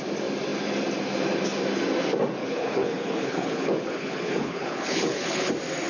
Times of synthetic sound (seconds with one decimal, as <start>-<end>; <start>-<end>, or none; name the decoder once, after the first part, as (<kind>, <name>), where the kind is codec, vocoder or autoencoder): 2.4-5.5 (codec, HILCodec)